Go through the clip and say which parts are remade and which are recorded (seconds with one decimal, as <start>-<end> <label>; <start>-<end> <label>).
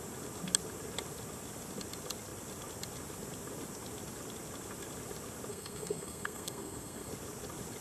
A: 0.0-5.5 recorded; 5.5-7.1 remade; 7.1-7.8 recorded